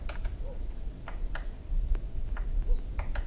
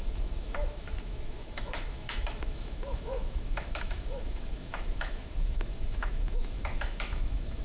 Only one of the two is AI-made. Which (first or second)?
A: second